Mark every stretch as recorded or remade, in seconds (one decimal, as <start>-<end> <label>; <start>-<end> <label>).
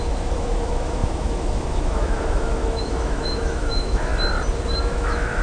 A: 0.0-4.1 remade; 4.1-4.8 recorded; 4.8-5.4 remade